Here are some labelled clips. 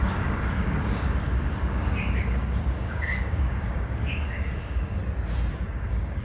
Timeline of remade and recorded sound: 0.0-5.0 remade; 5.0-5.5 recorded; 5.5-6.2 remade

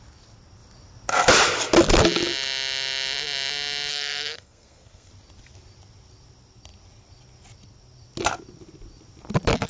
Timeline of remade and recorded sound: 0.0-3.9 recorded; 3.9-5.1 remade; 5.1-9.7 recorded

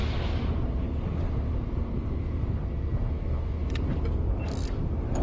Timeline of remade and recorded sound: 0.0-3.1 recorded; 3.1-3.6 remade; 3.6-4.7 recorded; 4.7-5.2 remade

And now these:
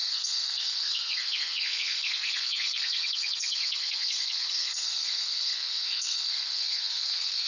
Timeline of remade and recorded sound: 0.0-7.5 remade